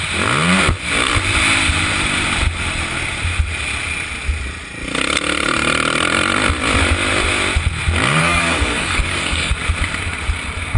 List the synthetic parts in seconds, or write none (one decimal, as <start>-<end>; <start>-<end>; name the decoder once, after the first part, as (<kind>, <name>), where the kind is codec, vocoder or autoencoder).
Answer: 8.2-9.5 (codec, DAC)

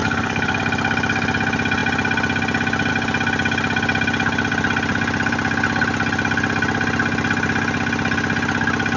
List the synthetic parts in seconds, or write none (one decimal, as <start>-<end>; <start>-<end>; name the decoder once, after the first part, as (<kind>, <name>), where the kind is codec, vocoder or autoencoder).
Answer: 0.0-0.6 (codec, DAC)

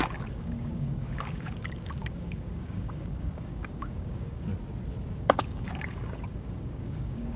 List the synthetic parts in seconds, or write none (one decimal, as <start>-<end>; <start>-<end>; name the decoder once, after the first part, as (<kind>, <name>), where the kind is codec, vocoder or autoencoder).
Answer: 0.0-4.5 (codec, DAC); 5.1-7.4

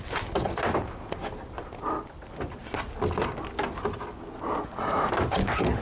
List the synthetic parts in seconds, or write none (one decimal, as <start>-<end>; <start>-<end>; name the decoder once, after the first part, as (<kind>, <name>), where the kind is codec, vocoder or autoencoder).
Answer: none

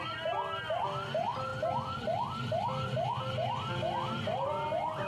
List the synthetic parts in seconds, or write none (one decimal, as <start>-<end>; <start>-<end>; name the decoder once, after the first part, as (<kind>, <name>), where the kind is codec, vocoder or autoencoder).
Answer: none

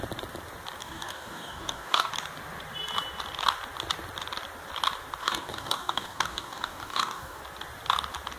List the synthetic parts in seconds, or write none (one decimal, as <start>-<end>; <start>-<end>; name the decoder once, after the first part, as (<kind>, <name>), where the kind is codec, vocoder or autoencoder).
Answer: 0.8-2.1 (codec, DAC); 5.2-7.4

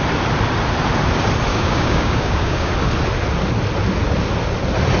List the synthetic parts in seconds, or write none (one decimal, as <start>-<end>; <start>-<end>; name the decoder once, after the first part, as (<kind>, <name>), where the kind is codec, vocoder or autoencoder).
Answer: 1.5-2.7 (codec, DAC)

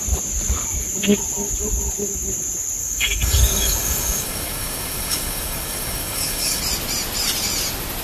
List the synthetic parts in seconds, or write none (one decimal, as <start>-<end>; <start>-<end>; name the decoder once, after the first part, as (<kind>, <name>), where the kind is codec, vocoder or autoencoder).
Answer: 2.8-6.6 (codec, DAC)